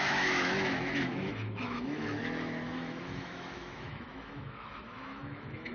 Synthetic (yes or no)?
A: yes